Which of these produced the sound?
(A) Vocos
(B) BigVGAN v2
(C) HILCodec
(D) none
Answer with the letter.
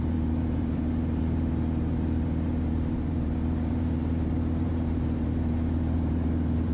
B